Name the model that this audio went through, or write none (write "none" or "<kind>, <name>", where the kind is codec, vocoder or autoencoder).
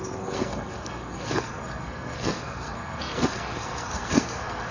codec, SNAC